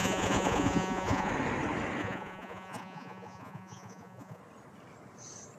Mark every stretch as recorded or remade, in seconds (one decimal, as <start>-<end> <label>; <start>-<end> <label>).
0.0-1.3 remade; 1.3-2.0 recorded; 2.0-4.4 remade; 4.4-5.6 recorded